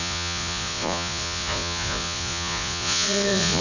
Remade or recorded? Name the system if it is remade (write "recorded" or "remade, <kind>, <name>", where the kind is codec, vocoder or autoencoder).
remade, vocoder, Vocos